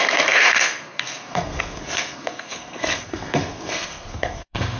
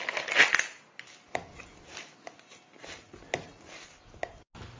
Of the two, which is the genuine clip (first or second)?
second